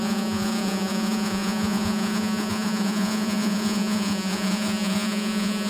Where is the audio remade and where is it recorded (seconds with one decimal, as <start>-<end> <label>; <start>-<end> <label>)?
0.0-5.7 remade